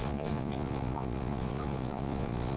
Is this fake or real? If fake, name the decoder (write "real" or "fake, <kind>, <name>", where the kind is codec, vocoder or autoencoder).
fake, vocoder, Vocos